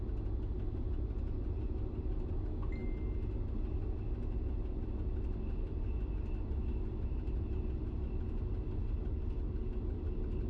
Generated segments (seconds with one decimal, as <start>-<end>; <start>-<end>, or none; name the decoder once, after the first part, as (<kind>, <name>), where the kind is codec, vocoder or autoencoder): none